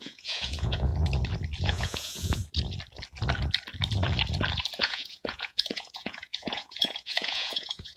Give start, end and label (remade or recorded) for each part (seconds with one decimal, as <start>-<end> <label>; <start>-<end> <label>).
0.0-0.9 remade; 0.9-1.6 recorded; 1.6-2.4 remade; 2.4-4.8 recorded; 4.8-8.0 remade